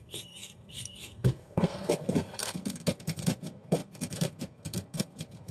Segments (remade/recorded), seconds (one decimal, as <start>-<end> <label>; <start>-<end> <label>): 0.0-5.5 remade